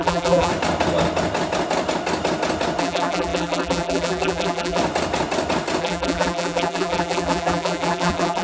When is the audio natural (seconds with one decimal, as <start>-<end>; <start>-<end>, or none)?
0.5-2.8; 4.8-5.8